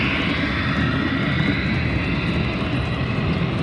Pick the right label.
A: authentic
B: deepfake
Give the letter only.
A